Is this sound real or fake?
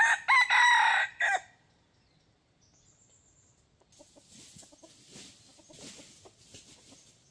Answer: real